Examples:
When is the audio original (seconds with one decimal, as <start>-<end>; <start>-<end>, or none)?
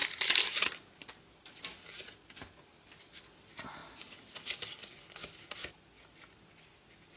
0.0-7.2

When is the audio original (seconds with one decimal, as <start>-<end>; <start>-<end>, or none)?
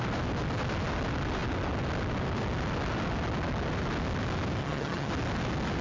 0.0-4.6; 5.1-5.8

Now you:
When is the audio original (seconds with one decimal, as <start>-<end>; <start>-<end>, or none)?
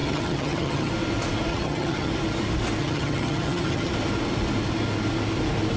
0.9-1.5; 2.1-2.8; 3.9-5.8